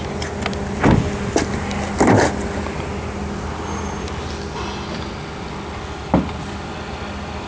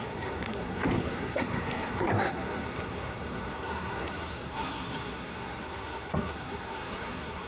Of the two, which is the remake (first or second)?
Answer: second